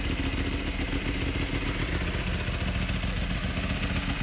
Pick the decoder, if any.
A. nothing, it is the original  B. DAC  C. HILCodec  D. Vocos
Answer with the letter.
A